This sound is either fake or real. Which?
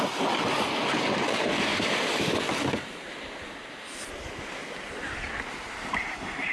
real